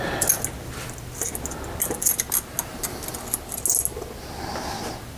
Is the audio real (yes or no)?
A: yes